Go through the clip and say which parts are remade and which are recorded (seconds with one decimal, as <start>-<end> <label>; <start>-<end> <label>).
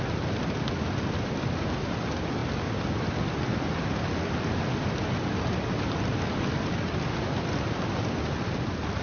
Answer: 0.0-9.0 recorded